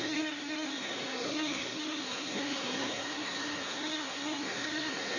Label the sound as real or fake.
fake